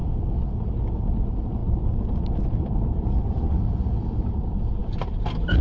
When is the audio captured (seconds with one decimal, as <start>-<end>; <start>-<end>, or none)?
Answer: 1.2-1.6; 3.4-5.6